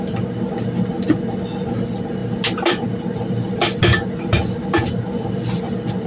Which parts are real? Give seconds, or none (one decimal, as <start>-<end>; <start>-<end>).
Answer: 0.0-6.1